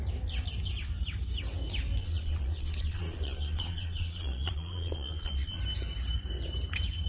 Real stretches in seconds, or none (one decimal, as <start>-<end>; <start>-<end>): 0.0-2.0; 5.6-7.1